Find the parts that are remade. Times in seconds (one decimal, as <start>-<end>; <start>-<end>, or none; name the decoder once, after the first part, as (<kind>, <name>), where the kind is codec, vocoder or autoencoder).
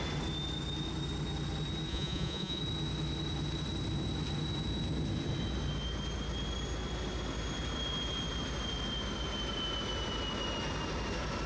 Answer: 1.9-2.6 (vocoder, Vocos)